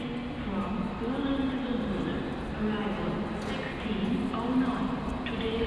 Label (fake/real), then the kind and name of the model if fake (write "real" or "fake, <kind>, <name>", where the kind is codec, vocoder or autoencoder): real